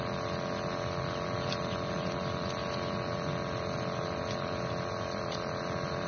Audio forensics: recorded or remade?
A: recorded